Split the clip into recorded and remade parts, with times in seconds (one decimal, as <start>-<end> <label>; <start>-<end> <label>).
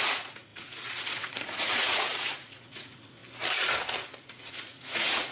0.0-3.2 remade; 3.2-4.2 recorded; 4.2-5.3 remade